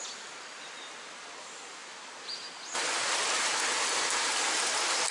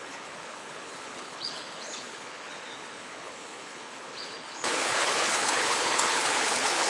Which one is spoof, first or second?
second